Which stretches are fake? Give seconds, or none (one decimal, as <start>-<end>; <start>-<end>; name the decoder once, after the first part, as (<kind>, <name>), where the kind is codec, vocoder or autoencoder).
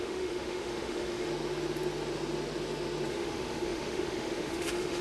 0.0-1.3 (autoencoder, DAC-VAE); 3.1-5.0